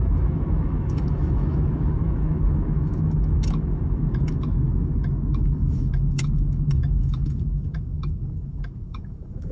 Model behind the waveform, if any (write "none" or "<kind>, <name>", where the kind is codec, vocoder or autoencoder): autoencoder, DAC-VAE